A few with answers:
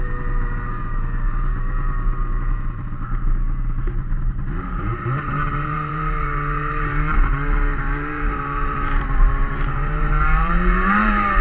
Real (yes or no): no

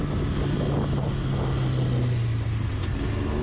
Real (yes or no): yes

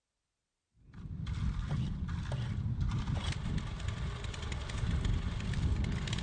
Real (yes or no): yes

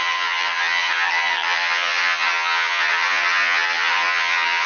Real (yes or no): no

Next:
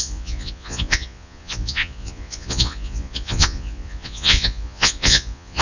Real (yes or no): no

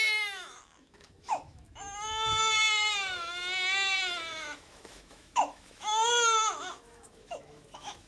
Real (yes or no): no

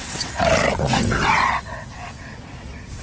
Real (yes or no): no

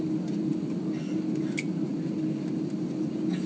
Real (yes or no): yes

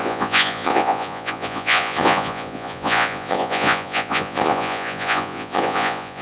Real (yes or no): no